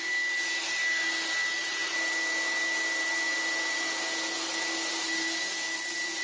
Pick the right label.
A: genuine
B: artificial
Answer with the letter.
A